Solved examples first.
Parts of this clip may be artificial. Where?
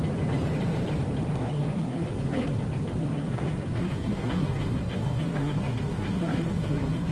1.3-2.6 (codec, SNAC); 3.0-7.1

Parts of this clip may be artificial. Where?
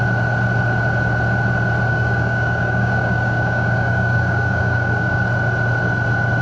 1.9-5.2 (codec, DAC)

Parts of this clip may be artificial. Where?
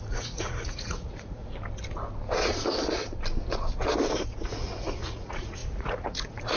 0.0-1.4 (vocoder, Vocos); 4.3-6.6